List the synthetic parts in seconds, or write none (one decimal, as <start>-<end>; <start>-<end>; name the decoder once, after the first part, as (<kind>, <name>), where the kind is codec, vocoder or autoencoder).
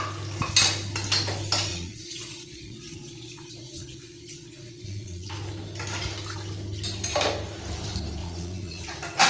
1.7-5.3 (vocoder, Vocos); 8.2-8.8